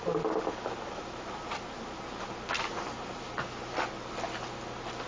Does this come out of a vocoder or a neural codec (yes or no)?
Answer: no